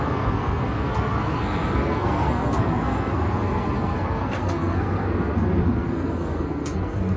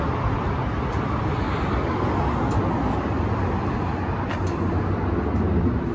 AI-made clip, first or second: first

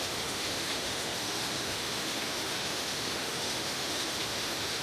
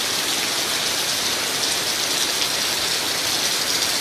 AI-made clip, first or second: first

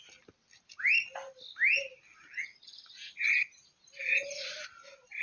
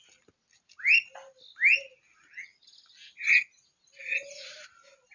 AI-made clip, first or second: first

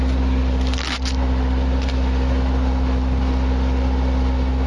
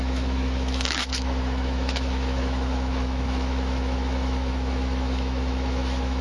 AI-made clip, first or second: second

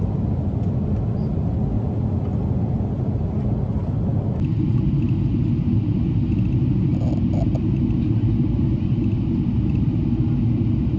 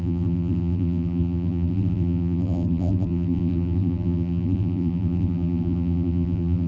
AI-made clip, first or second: second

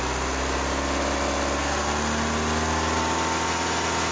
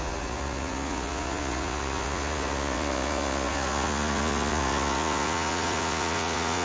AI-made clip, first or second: second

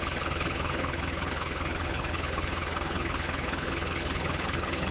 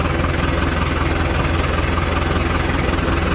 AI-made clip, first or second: first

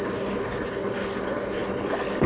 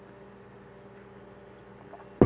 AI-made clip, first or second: first